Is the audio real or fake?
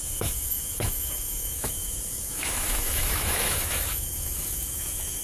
fake